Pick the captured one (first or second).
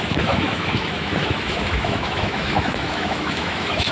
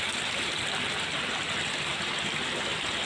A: second